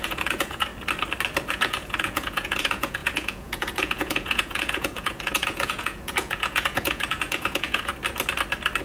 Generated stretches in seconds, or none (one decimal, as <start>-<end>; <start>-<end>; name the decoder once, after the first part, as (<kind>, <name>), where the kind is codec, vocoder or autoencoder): 0.0-0.7 (vocoder, Vocos); 1.5-7.9